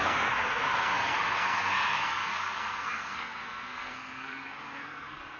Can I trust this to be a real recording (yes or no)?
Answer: no